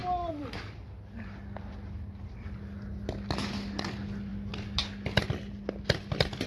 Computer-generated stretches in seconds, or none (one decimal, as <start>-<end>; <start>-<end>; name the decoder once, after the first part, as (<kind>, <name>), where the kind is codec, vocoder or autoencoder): none